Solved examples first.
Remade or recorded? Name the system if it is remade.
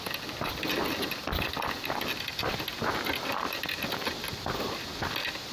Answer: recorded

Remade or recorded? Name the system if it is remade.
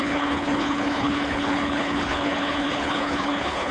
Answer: remade, codec, HILCodec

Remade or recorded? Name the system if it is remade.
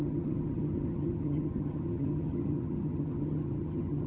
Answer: remade, vocoder, HiFi-GAN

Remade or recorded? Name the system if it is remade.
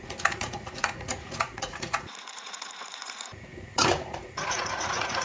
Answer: remade, vocoder, Vocos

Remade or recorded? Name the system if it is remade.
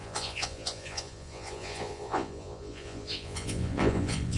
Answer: remade, vocoder, Vocos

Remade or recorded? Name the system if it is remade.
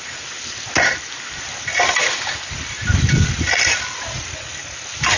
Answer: recorded